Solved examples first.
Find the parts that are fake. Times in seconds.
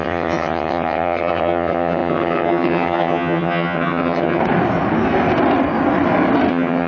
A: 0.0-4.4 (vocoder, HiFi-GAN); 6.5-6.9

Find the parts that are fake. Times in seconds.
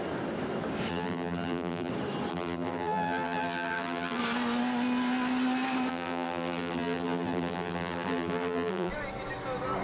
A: 0.9-1.9 (vocoder, BigVGAN v2); 2.3-4.2; 5.9-8.9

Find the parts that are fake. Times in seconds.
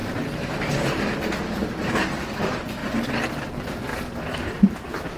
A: 0.0-1.9 (vocoder, BigVGAN v2); 3.9-5.2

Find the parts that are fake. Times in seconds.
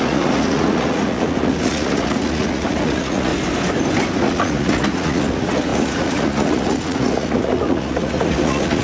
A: 0.0-3.3 (vocoder, Vocos); 4.2-8.8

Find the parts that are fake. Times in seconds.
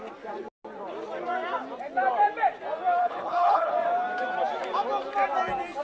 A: 3.0-3.7 (codec, HILCodec)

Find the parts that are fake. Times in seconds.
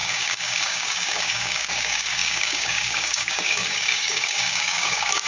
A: 0.0-5.3 (codec, DAC)